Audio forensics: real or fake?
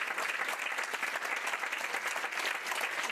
real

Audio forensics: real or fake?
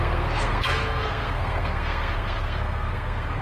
fake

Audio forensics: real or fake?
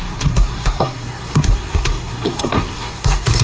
fake